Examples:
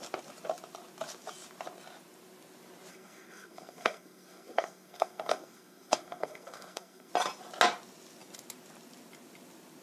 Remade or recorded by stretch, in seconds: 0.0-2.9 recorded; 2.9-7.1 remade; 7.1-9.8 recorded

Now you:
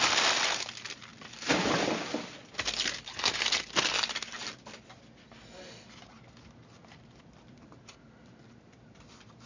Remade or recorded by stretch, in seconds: 0.0-9.5 recorded